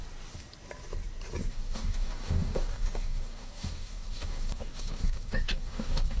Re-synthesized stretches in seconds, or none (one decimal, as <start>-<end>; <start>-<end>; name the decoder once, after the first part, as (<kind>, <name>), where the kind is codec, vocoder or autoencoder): 1.5-6.2 (codec, DAC)